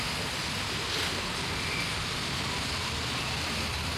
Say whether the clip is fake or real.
real